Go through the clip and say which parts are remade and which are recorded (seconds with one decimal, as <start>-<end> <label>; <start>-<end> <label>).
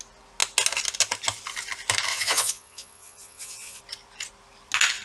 0.0-2.1 recorded; 2.1-3.8 remade; 3.8-5.0 recorded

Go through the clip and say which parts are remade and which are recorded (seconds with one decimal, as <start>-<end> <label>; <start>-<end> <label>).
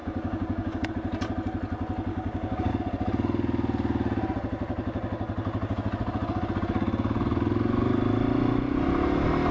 0.0-0.9 remade; 0.9-2.1 recorded; 2.1-2.7 remade; 2.7-9.5 recorded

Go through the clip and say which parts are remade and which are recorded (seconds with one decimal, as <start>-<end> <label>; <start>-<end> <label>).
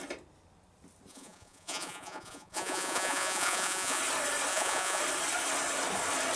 0.0-1.1 recorded; 1.1-4.0 remade; 4.0-4.5 recorded; 4.5-5.0 remade; 5.0-6.4 recorded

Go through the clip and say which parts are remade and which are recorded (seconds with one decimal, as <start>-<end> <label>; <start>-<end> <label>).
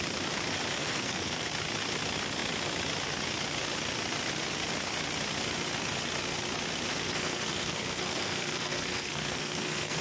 0.0-0.8 recorded; 0.8-1.5 remade; 1.5-6.9 recorded; 6.9-10.0 remade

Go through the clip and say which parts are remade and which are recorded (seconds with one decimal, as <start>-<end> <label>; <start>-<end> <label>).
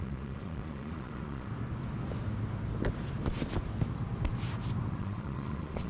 0.0-1.5 remade; 1.5-4.9 recorded; 4.9-5.9 remade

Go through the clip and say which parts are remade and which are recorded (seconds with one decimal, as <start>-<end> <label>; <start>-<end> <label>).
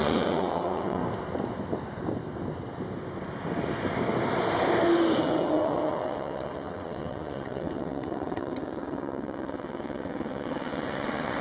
0.0-1.0 remade; 1.0-5.2 recorded; 5.2-11.4 remade